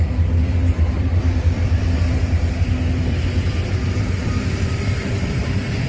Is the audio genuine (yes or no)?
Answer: no